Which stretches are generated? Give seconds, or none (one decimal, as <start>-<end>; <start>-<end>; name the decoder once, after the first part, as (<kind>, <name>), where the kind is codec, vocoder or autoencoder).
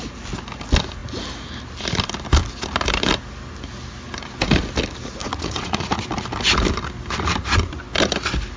5.2-6.0 (vocoder, Vocos)